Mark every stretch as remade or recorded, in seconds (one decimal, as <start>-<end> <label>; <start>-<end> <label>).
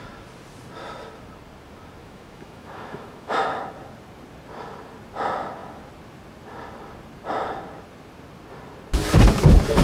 0.0-2.0 recorded; 2.0-3.6 remade; 3.6-9.8 recorded